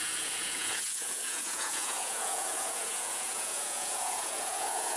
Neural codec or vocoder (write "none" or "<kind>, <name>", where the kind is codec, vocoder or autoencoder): vocoder, Vocos